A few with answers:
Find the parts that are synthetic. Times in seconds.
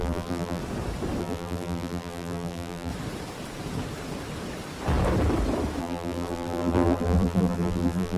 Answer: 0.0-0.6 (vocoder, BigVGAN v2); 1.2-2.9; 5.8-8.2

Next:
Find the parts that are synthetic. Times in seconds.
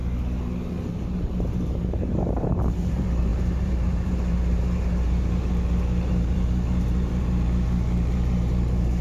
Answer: 0.9-9.0 (vocoder, BigVGAN v2)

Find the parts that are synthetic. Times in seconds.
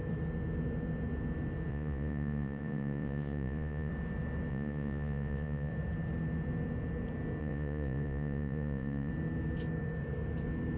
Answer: 1.7-3.9 (vocoder, Vocos); 4.5-5.7; 7.4-9.1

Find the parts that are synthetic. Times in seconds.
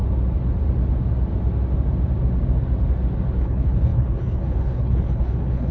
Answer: 3.4-5.7 (codec, HILCodec)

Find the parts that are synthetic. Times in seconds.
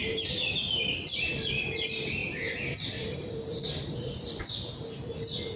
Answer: 0.0-1.6 (vocoder, BigVGAN v2); 2.2-4.4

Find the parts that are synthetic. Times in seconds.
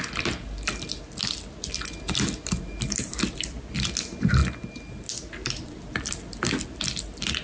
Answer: none